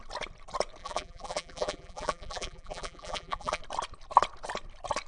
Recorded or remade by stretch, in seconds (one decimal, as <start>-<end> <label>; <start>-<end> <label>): 0.0-0.8 recorded; 0.8-3.6 remade; 3.6-5.1 recorded

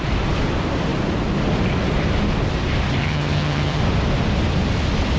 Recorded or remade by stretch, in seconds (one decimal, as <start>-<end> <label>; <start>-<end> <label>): 0.0-3.0 recorded; 3.0-3.8 remade; 3.8-5.2 recorded

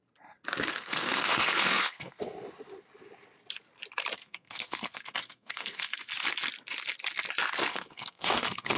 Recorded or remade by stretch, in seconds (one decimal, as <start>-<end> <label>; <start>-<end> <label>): 0.0-0.7 recorded; 0.7-2.2 remade; 2.2-4.2 recorded; 4.2-6.0 remade; 6.0-7.7 recorded; 7.7-8.8 remade

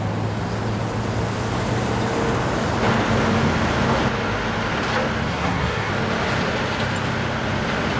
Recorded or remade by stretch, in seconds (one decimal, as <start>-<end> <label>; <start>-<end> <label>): 0.0-5.3 recorded; 5.3-5.9 remade; 5.9-8.0 recorded

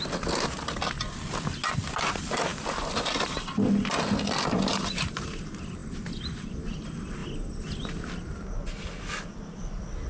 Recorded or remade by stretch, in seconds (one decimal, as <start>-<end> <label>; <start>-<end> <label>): 0.0-5.8 recorded; 5.8-6.7 remade; 6.7-10.1 recorded

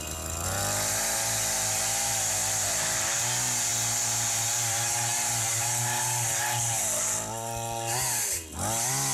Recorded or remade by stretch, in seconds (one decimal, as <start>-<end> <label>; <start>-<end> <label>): 0.0-9.1 recorded

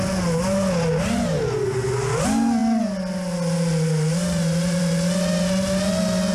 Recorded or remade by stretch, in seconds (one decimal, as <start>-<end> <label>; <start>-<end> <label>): 0.0-6.3 recorded